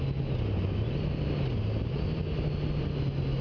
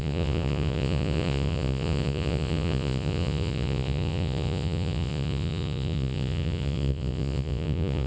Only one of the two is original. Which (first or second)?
first